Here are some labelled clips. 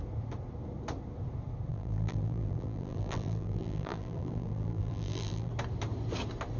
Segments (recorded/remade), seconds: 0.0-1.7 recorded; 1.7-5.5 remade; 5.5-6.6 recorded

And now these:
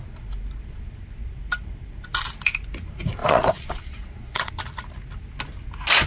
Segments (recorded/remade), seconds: 0.0-3.2 recorded; 3.2-4.5 remade; 4.5-6.1 recorded

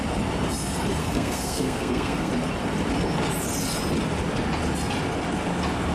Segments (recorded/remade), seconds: 0.0-1.0 recorded; 1.0-2.3 remade; 2.3-5.9 recorded

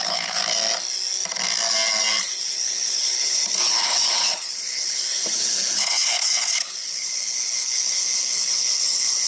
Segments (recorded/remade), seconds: 0.0-0.4 remade; 0.4-2.2 recorded; 2.2-9.3 remade

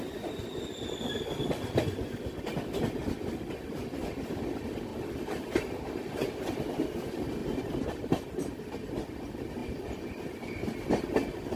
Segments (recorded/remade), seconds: 0.0-4.9 recorded; 4.9-6.7 remade; 6.7-7.4 recorded; 7.4-8.7 remade; 8.7-9.6 recorded; 9.6-10.2 remade; 10.2-11.6 recorded

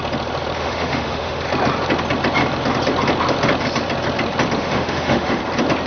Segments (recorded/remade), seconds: 0.0-0.6 recorded; 0.6-1.4 remade; 1.4-4.6 recorded; 4.6-5.4 remade; 5.4-5.9 recorded

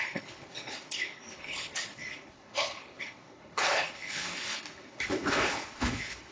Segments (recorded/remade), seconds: 0.0-6.3 remade

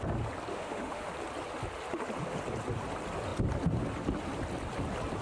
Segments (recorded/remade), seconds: 0.0-0.5 recorded; 0.5-1.1 remade; 1.1-5.2 recorded